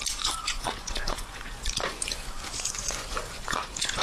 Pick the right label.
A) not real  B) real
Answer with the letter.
A